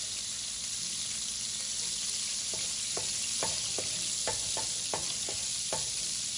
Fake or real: real